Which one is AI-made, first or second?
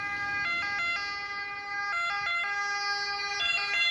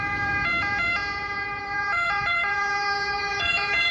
second